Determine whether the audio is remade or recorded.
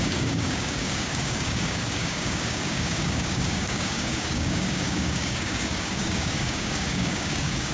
remade